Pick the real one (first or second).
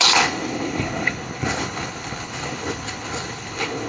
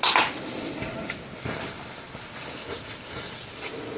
second